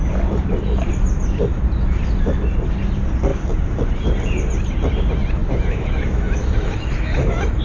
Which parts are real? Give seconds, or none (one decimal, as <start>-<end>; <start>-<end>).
0.0-5.4